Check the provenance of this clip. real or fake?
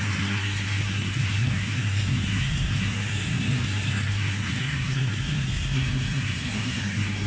fake